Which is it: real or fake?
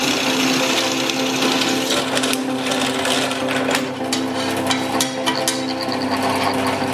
real